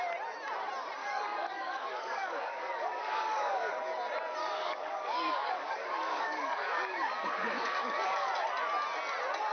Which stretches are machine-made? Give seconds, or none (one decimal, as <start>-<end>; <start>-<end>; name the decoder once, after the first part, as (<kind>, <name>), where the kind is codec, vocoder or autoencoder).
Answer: 1.0-3.7 (codec, DAC); 4.4-8.3